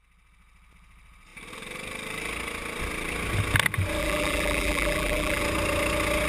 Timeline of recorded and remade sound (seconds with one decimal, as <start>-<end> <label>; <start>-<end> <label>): 0.0-4.0 recorded; 4.0-5.4 remade; 5.4-6.3 recorded